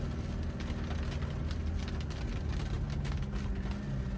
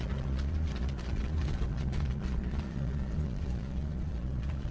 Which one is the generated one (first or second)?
second